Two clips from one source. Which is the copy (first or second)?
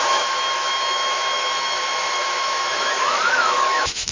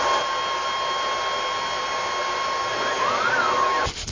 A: first